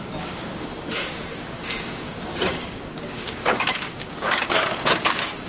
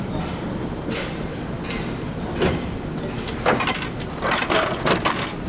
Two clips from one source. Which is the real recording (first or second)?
second